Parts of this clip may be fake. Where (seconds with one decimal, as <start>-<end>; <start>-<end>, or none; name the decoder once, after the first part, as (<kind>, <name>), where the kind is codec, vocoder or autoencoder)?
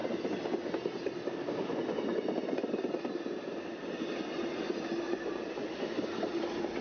none